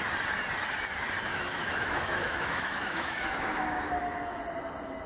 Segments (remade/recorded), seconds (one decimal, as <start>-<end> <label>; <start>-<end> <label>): 0.0-1.3 recorded; 1.3-4.4 remade; 4.4-5.1 recorded